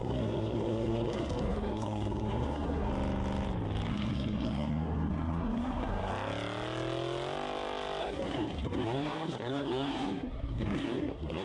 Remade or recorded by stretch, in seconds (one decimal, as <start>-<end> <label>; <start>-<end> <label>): 0.0-2.9 remade; 2.9-3.9 recorded; 3.9-6.1 remade; 6.1-8.0 recorded; 8.0-11.4 remade